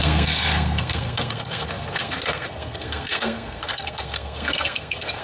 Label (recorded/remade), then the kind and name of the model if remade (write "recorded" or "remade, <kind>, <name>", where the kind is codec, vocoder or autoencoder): remade, codec, SNAC